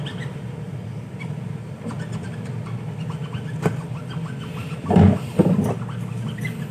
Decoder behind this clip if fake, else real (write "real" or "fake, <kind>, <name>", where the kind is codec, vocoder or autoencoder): real